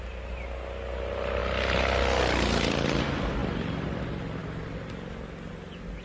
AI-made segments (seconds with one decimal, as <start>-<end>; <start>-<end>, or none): none